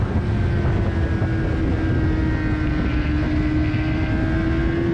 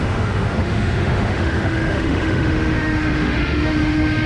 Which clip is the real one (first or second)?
first